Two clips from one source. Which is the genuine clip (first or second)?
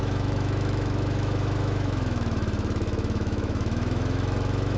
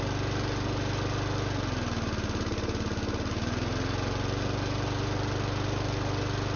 second